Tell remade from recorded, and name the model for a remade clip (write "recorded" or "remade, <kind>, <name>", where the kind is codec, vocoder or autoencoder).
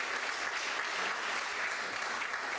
recorded